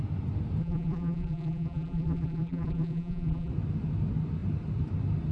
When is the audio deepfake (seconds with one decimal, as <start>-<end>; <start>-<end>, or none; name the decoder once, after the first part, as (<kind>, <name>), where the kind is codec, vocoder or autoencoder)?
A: 0.6-3.5 (vocoder, BigVGAN v2)